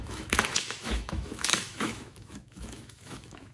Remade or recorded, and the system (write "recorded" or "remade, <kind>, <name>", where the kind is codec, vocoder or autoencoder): remade, autoencoder, DAC-VAE